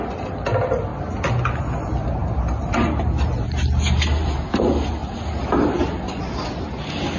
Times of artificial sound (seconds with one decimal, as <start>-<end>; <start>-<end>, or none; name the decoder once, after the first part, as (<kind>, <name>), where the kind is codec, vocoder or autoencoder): none